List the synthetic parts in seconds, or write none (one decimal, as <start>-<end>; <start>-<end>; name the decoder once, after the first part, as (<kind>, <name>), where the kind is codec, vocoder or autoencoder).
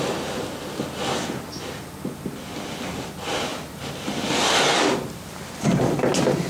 3.5-5.8 (vocoder, BigVGAN v2)